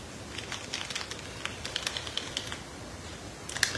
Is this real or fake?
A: real